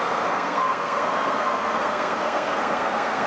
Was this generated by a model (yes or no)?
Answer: yes